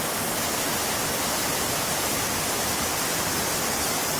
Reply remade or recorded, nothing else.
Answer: recorded